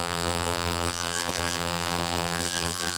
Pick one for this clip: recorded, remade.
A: remade